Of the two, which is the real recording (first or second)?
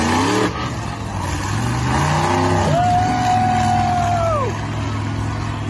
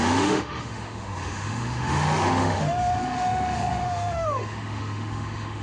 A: first